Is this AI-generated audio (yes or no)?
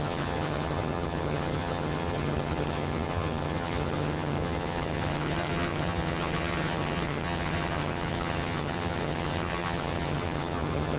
yes